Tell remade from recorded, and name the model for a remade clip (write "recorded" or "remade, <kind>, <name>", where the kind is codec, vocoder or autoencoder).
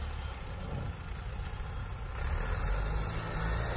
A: recorded